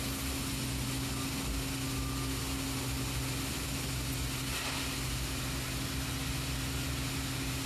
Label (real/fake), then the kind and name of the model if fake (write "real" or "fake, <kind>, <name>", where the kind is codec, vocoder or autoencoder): real